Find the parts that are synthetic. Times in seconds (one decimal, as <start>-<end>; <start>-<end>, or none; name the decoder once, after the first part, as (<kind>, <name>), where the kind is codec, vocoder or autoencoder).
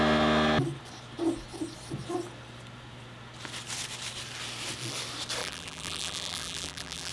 5.4-7.1 (vocoder, BigVGAN v2)